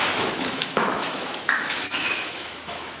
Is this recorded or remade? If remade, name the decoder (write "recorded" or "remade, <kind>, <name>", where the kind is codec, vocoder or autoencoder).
remade, autoencoder, DAC-VAE